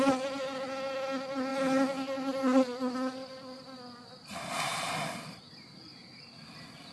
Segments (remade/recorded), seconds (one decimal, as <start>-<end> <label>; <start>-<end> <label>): 0.0-6.9 recorded

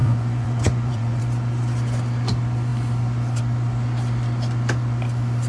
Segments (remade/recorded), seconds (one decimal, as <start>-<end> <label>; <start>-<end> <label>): 0.0-1.2 remade; 1.2-5.5 recorded

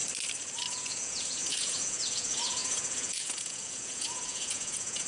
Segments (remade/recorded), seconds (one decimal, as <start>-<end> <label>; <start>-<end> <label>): 0.0-0.7 recorded; 0.7-5.1 remade